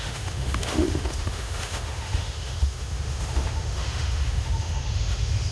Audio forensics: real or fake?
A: fake